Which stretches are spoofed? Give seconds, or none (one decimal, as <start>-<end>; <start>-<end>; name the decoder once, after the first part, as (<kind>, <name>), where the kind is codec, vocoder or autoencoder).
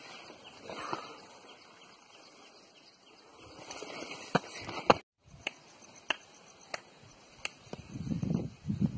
3.3-6.0 (vocoder, BigVGAN v2)